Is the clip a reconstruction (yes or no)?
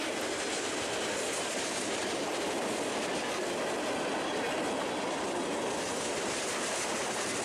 no